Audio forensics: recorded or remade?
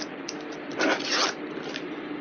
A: recorded